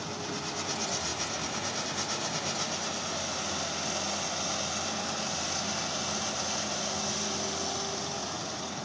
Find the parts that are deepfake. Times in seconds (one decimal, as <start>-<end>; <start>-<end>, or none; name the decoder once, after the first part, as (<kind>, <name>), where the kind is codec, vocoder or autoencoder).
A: 8.2-8.8 (vocoder, Vocos)